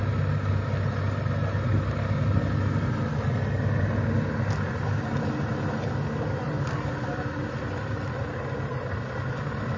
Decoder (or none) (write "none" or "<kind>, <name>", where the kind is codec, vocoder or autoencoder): none